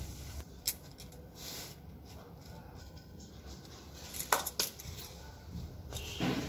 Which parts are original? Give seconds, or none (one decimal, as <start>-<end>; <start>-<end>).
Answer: 0.0-2.8; 3.3-6.5

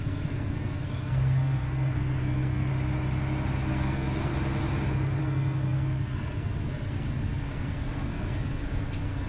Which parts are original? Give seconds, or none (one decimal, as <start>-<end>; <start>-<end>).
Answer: 2.7-3.7; 4.3-5.2

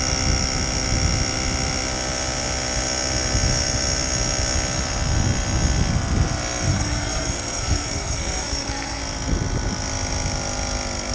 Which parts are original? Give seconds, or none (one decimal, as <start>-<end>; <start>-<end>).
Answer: 0.0-6.7; 9.0-11.1

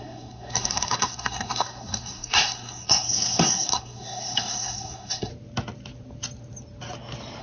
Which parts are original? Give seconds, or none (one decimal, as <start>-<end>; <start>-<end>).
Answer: 5.3-7.4

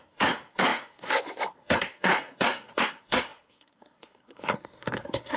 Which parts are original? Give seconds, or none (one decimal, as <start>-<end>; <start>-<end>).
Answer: none

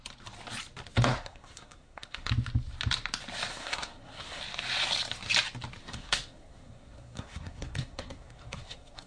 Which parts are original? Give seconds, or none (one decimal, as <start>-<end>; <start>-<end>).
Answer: 0.0-1.1; 2.3-3.5; 4.4-5.8

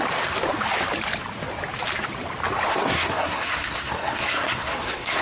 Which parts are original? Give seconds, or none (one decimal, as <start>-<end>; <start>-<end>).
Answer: 0.0-2.7